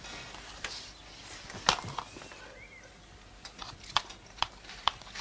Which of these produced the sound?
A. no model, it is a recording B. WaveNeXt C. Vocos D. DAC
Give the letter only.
A